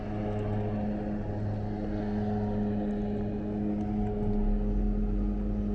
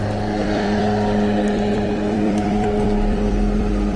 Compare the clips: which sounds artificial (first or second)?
second